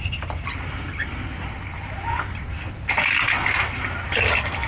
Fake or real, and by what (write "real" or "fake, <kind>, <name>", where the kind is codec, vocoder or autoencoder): real